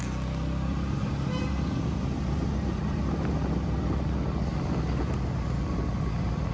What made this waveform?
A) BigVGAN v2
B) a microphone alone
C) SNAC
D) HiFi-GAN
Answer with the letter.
B